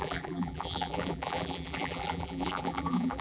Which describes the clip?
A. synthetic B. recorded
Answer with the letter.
A